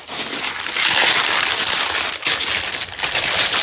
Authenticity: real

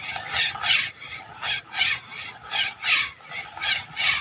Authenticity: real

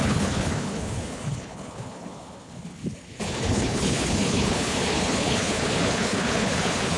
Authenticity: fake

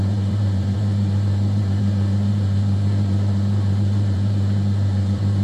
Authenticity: fake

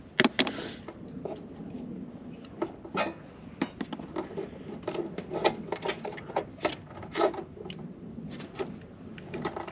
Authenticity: real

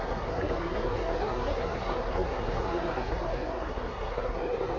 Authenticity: fake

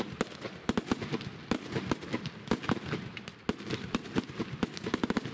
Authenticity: real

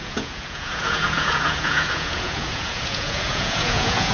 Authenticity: fake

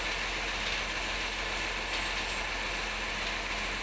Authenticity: real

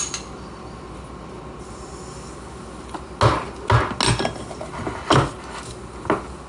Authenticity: real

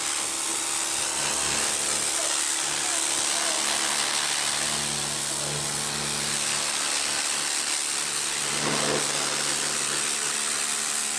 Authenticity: real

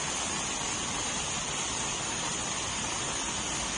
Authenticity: real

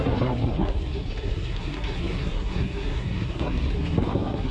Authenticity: fake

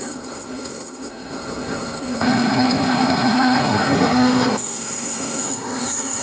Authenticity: fake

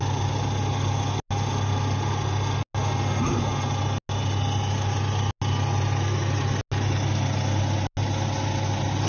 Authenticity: real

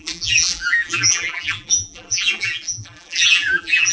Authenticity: fake